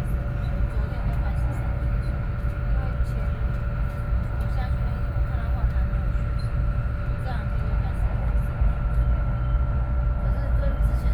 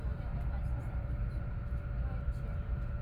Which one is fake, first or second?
second